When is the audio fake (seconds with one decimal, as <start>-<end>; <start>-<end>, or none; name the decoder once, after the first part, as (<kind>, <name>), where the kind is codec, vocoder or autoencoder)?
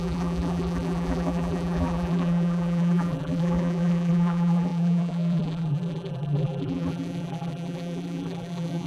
0.0-8.9 (vocoder, BigVGAN v2)